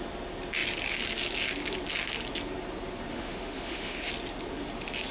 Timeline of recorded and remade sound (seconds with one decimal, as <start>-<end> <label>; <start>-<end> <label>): 0.0-3.1 recorded; 3.1-4.1 remade; 4.1-5.1 recorded

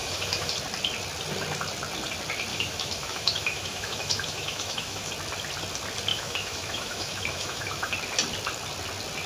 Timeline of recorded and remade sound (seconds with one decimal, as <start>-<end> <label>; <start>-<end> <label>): 0.0-0.5 remade; 0.5-2.5 recorded; 2.5-5.1 remade; 5.1-6.1 recorded; 6.1-7.9 remade; 7.9-9.3 recorded